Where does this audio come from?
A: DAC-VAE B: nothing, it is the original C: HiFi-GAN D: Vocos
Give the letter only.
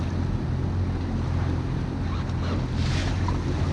B